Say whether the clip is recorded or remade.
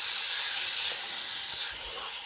recorded